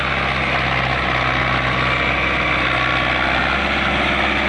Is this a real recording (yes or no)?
yes